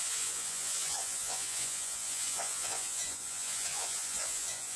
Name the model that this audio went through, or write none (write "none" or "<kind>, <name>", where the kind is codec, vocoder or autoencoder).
vocoder, Vocos